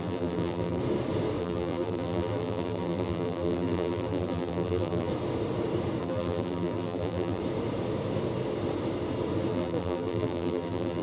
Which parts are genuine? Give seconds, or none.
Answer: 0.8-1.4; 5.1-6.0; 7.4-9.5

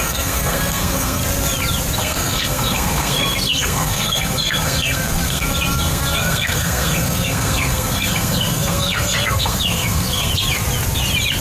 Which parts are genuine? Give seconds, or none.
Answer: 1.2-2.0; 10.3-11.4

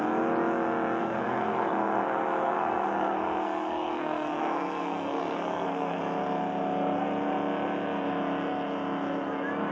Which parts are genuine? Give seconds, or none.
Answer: 0.0-1.0; 6.0-9.7